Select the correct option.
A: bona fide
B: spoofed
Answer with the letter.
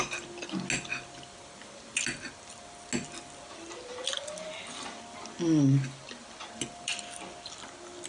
A